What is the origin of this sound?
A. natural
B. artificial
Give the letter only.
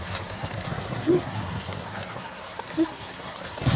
B